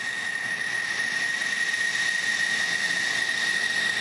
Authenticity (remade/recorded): recorded